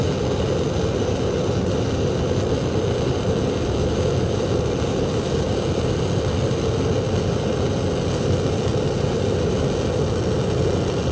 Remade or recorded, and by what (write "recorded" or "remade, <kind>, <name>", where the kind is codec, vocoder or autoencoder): recorded